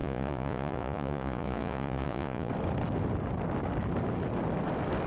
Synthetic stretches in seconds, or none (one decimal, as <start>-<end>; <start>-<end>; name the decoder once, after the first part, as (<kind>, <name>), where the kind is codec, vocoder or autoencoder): 0.0-2.5 (vocoder, Vocos)